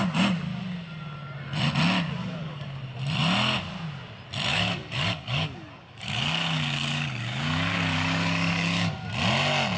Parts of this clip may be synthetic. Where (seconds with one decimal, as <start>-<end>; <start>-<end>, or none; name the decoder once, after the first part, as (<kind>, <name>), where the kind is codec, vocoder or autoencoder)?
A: 2.2-2.8 (codec, DAC); 4.5-9.1